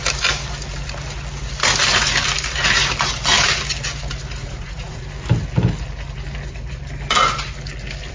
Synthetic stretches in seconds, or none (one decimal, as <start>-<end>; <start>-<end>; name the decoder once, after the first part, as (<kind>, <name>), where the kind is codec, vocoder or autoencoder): 4.4-5.0 (vocoder, Vocos)